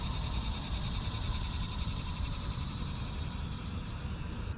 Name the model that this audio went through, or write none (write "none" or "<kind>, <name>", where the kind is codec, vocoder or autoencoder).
vocoder, BigVGAN v2